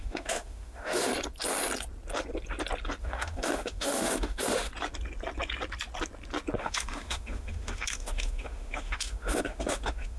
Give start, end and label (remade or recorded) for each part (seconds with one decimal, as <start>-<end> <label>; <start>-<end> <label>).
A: 0.0-1.1 remade; 1.1-3.0 recorded; 3.0-4.7 remade; 4.7-6.6 recorded; 6.6-10.2 remade